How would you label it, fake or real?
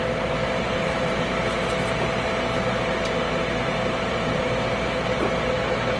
fake